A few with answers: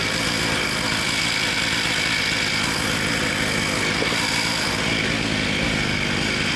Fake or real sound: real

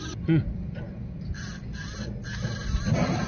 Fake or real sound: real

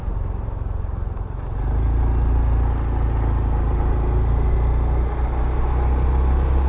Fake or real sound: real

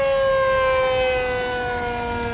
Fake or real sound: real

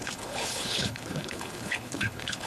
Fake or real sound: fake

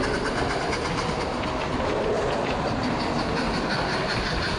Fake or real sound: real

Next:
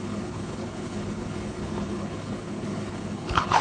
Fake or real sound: fake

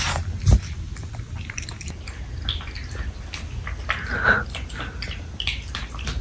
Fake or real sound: real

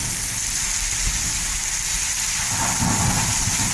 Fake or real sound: real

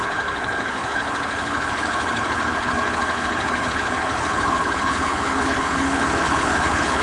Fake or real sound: fake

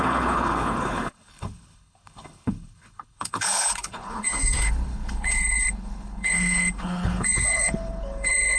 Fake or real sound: fake